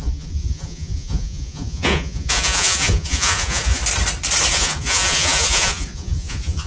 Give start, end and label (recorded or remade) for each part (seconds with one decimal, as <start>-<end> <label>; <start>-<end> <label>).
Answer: 0.0-3.8 remade; 3.8-4.5 recorded; 4.5-6.7 remade